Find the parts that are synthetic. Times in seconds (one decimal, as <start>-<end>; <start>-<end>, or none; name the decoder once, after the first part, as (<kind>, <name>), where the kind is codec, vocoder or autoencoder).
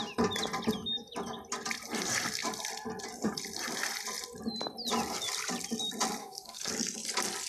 6.2-6.7 (codec, SNAC)